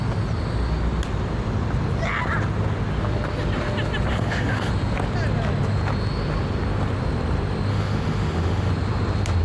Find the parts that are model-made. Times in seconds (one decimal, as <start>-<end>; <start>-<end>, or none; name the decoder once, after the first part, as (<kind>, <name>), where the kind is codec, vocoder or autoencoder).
4.1-4.7 (autoencoder, DAC-VAE); 7.7-8.7